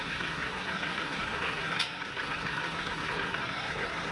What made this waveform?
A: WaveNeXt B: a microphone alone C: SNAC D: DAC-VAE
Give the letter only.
C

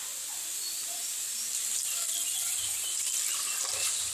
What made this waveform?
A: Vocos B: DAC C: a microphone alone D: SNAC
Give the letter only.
C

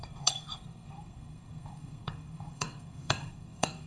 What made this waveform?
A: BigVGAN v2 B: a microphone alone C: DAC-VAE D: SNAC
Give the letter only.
D